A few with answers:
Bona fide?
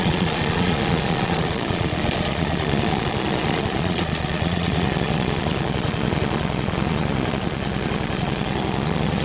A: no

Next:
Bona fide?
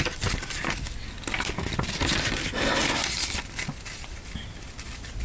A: yes